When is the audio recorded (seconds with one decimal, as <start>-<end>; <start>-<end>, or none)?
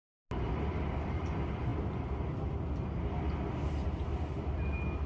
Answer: 0.0-5.1